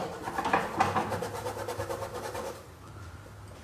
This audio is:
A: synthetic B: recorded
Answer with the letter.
B